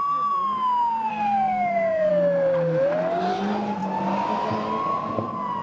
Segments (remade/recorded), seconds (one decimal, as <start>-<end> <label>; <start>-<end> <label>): 0.0-1.1 recorded; 1.1-2.1 remade; 2.1-5.6 recorded